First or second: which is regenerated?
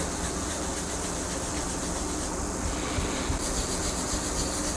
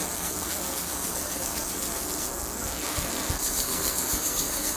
second